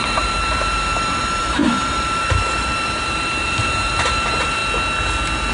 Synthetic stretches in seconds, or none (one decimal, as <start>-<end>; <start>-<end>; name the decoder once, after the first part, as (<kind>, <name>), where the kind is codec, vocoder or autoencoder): 0.0-4.6 (vocoder, BigVGAN v2)